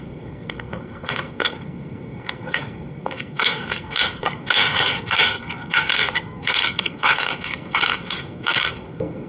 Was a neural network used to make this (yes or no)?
yes